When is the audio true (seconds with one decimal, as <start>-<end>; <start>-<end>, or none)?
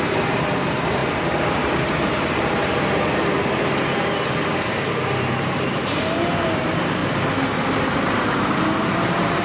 7.0-8.8